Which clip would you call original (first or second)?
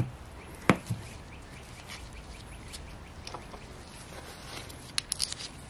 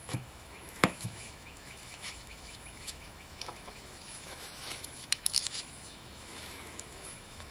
first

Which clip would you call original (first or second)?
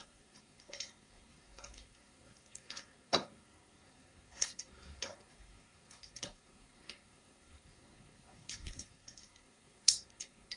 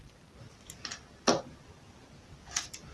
second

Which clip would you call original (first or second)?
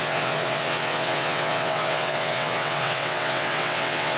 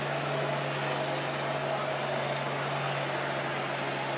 second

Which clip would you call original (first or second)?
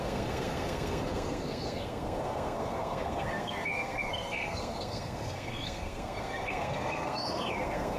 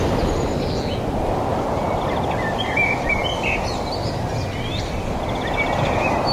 second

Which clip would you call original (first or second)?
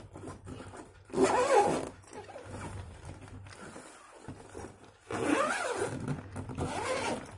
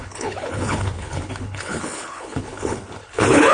first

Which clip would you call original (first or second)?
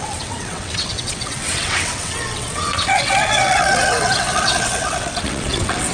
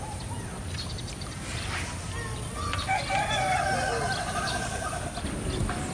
second